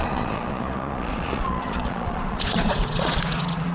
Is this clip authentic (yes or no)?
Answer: no